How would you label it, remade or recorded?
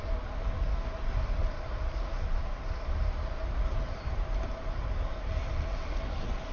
recorded